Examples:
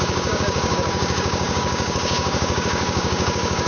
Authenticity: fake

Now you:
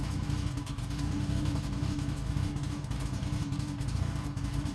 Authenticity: fake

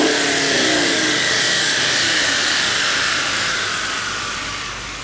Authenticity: fake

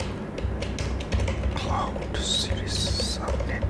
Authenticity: real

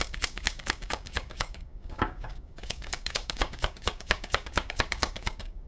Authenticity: fake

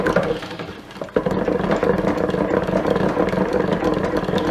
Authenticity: real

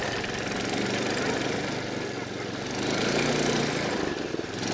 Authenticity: real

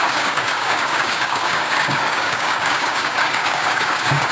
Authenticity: fake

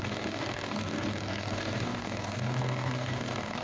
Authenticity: fake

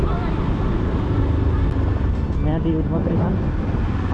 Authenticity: real